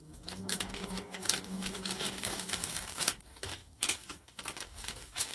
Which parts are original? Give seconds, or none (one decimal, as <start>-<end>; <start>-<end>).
none